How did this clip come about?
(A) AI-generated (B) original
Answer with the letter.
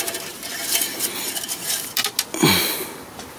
B